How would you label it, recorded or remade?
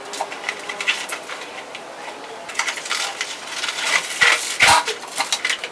recorded